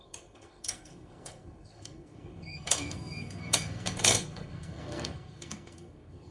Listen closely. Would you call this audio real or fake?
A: fake